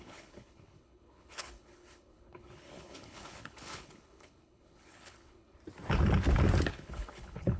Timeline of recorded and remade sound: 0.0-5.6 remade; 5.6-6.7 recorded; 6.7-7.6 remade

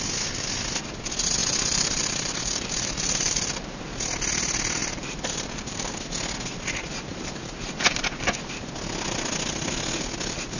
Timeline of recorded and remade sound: 0.0-1.4 recorded; 1.4-3.8 remade; 3.8-4.8 recorded; 4.8-5.9 remade; 5.9-7.1 recorded; 7.1-8.3 remade; 8.3-10.6 recorded

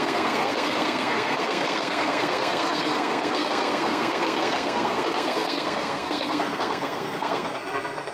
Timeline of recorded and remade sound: 0.0-8.1 remade

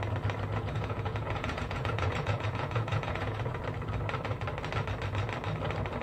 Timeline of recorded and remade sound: 0.0-0.5 recorded; 0.5-3.6 remade; 3.6-6.0 recorded